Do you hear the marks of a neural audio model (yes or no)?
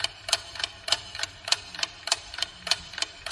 yes